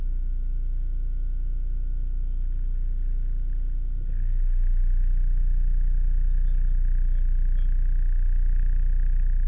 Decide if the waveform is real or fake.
real